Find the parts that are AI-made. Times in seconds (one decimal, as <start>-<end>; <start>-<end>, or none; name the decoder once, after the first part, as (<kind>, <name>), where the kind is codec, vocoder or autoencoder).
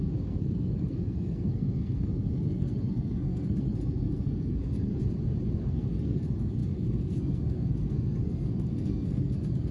0.0-4.9 (codec, SNAC); 5.5-9.7